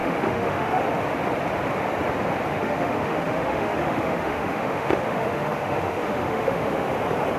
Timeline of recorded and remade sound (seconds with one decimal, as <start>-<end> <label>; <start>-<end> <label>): 0.0-0.8 remade; 0.8-2.5 recorded; 2.5-6.9 remade; 6.9-7.4 recorded